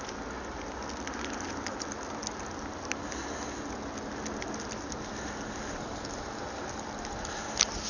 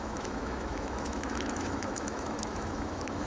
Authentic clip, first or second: first